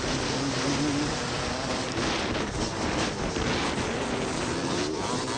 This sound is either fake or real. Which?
real